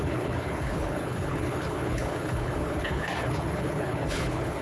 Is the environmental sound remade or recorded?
remade